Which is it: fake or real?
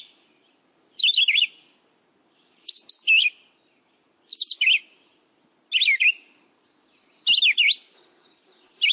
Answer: real